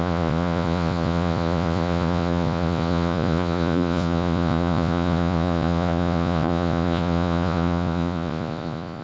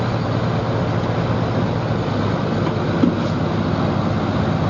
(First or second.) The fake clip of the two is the first